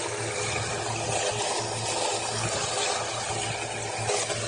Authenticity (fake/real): real